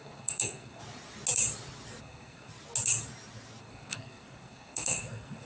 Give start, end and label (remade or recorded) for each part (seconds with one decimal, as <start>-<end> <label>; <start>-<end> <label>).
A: 0.0-0.8 remade; 0.8-2.0 recorded; 2.0-2.5 remade; 2.5-3.6 recorded; 3.6-5.5 remade